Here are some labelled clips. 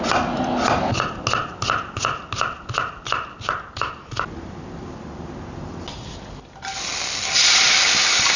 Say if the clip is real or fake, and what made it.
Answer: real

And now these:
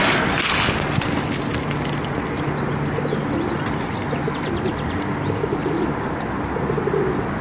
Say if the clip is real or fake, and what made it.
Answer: real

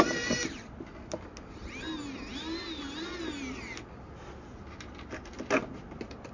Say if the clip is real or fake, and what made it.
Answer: real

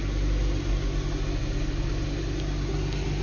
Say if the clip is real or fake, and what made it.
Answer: real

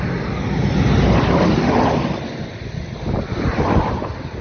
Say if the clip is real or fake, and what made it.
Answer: real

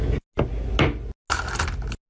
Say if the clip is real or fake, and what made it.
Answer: real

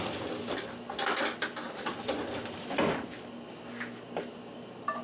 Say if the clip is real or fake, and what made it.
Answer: real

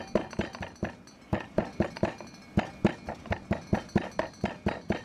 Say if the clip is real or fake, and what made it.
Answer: real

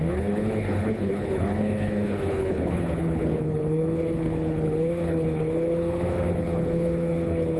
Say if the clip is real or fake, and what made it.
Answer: fake, codec, HILCodec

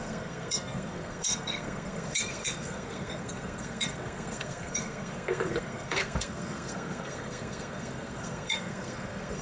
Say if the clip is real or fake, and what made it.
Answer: fake, codec, SNAC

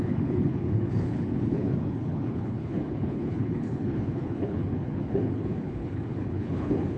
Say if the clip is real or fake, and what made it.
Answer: fake, codec, HILCodec